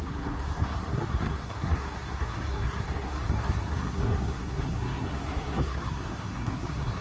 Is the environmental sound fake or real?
fake